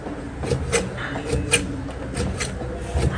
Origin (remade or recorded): recorded